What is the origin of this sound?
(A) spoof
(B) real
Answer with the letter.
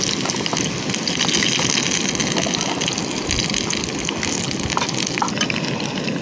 B